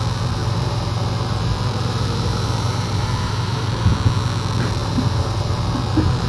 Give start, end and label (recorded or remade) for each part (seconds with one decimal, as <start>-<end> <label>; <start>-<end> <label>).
0.0-0.4 recorded; 0.4-3.8 remade; 3.8-4.8 recorded; 4.8-5.5 remade; 5.5-6.3 recorded